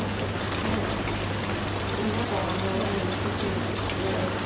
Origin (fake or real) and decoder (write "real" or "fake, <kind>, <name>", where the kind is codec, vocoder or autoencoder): real